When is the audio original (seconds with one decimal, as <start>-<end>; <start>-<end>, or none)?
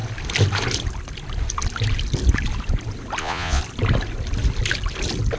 0.0-3.2; 3.6-5.4